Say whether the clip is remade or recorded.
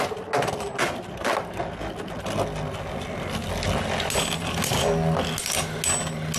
recorded